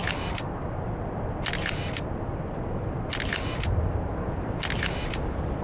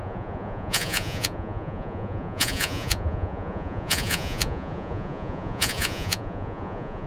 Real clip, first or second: first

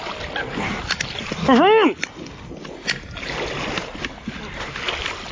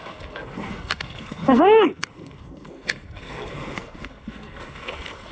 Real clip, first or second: first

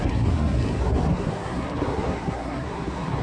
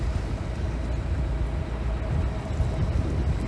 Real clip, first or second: second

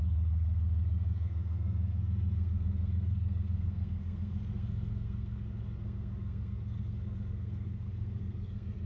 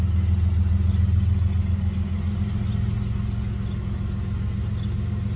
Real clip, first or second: second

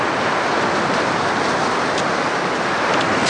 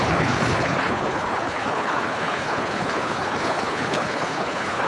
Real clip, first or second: first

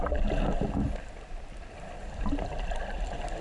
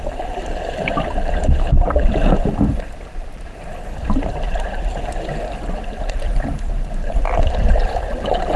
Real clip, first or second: first